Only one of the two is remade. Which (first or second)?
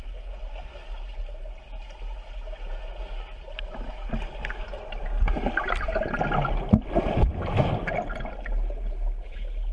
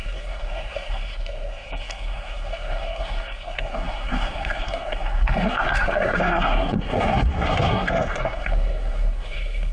second